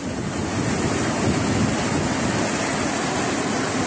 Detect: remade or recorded recorded